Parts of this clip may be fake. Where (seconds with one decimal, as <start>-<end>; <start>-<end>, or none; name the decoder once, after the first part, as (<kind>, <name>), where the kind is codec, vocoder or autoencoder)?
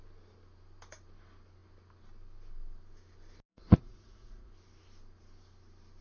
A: 3.5-4.5 (vocoder, Vocos)